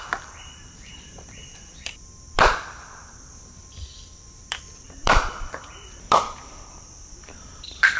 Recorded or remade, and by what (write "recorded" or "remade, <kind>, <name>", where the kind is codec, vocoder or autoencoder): remade, vocoder, BigVGAN v2